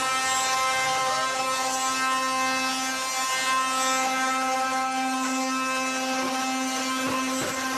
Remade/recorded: recorded